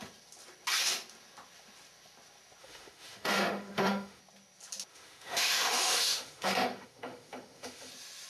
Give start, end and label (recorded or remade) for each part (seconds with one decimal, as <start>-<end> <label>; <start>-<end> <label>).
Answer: 0.0-2.6 recorded; 2.6-4.2 remade; 4.2-4.9 recorded; 4.9-7.9 remade; 7.9-8.3 recorded

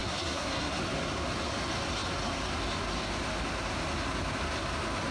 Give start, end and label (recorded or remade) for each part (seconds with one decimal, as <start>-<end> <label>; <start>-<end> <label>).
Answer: 0.0-0.8 remade; 0.8-5.1 recorded

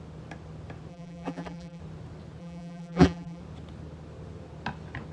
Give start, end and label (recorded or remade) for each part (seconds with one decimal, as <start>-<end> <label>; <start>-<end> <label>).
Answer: 0.0-0.9 recorded; 0.9-1.8 remade; 1.8-2.4 recorded; 2.4-3.4 remade; 3.4-5.1 recorded

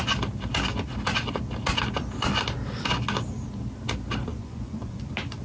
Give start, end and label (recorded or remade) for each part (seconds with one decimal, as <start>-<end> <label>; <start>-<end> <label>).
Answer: 0.0-4.3 recorded; 4.3-5.0 remade; 5.0-5.4 recorded